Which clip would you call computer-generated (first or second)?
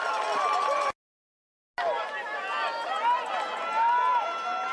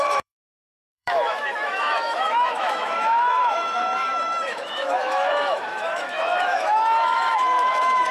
second